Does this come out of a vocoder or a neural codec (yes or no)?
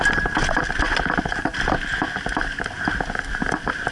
no